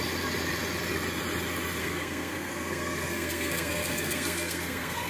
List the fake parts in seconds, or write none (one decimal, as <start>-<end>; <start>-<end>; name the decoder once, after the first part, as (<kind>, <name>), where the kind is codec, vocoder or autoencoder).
1.8-5.1 (codec, SNAC)